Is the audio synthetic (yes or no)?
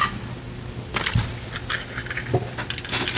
no